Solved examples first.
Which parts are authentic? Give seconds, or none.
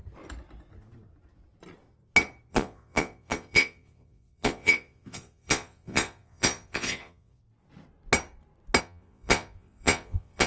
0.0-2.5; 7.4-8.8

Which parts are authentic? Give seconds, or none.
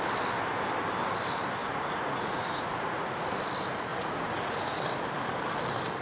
0.0-1.6; 3.4-3.9; 4.8-6.0